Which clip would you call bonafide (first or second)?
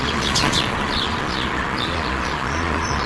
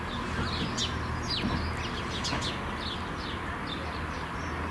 second